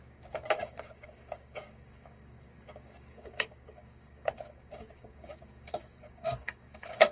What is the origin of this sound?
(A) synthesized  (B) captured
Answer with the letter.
A